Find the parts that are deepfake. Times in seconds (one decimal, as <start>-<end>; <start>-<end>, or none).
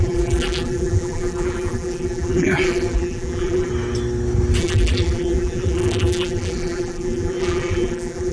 0.0-3.7; 4.6-8.3